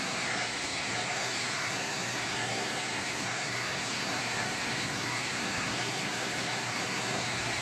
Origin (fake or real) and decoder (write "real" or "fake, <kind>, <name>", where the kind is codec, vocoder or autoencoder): fake, codec, SNAC